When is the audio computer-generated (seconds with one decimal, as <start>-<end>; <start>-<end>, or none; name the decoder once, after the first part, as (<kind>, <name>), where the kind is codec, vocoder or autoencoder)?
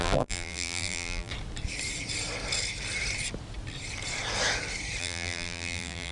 0.0-1.3 (vocoder, BigVGAN v2); 5.0-6.1